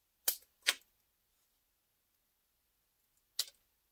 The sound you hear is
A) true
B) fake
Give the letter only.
A